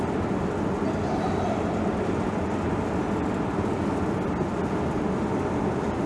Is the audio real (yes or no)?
yes